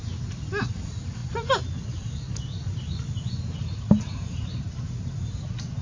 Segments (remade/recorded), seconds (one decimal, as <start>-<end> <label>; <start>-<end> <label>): 0.0-5.8 recorded